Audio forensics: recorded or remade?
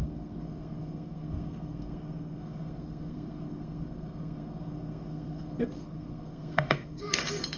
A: remade